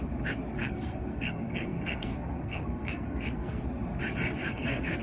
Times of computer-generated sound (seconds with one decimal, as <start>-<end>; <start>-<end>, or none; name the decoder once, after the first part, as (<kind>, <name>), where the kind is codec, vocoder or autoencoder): 0.6-3.6 (codec, SNAC); 4.4-5.0